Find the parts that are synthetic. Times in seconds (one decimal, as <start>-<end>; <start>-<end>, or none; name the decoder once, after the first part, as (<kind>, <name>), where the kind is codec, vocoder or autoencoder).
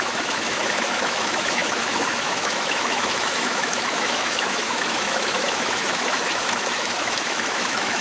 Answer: 0.0-8.0 (autoencoder, DAC-VAE)